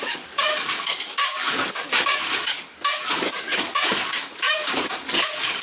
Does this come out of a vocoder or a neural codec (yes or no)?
yes